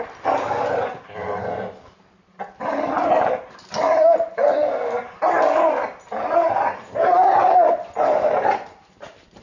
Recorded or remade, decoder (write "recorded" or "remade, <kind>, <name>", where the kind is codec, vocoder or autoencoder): recorded